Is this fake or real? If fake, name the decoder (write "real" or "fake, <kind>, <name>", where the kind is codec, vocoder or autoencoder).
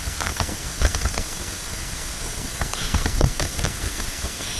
fake, codec, SNAC